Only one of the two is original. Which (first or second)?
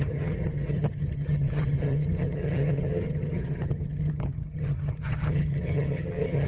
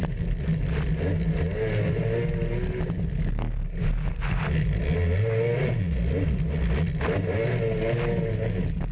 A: second